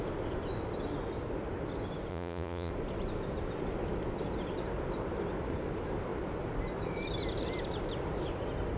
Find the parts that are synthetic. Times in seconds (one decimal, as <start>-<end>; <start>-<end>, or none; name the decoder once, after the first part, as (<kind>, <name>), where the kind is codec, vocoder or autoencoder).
2.1-2.7 (vocoder, Vocos)

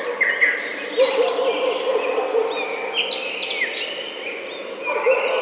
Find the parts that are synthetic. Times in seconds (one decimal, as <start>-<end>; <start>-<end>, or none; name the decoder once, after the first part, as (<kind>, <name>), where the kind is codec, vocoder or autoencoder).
none

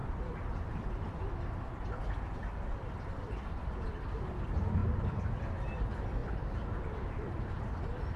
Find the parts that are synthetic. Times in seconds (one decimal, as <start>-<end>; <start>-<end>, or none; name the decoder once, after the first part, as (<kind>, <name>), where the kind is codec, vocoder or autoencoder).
0.0-4.2 (vocoder, BigVGAN v2); 4.8-5.4; 6.2-7.4

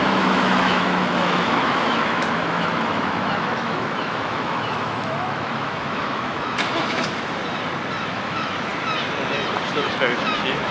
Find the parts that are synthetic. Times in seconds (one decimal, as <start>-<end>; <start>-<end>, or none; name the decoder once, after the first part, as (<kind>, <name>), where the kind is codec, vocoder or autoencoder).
0.0-7.4 (autoencoder, DAC-VAE); 8.1-8.7; 9.7-10.7

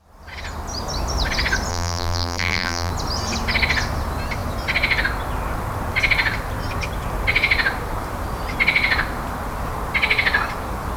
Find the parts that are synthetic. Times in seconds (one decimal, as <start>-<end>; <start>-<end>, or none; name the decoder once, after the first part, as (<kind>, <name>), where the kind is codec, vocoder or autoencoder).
1.7-2.9 (vocoder, BigVGAN v2)